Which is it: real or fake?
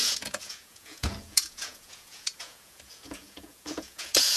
fake